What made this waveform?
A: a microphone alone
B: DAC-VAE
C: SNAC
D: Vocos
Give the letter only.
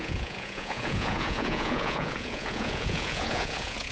D